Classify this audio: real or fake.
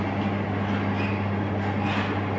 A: real